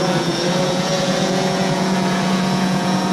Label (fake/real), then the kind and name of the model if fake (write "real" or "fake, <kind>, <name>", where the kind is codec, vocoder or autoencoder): fake, vocoder, Vocos